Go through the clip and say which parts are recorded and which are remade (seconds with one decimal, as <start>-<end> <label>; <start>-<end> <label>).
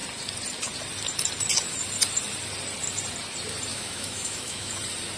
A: 0.0-3.7 recorded; 3.7-4.7 remade; 4.7-5.2 recorded